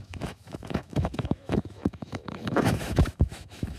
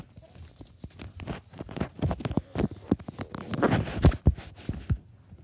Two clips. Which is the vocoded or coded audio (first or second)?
first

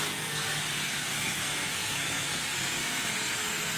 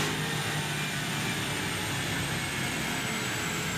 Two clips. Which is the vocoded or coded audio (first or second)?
first